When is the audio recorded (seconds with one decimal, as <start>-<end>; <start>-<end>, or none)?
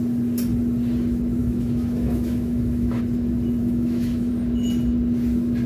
0.0-1.4; 3.0-3.6; 4.3-5.7